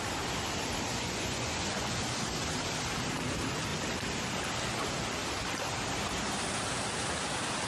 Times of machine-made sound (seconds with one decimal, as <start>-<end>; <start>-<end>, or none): 0.9-2.0